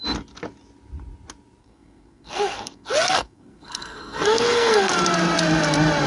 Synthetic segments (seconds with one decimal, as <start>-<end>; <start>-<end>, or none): 1.6-4.9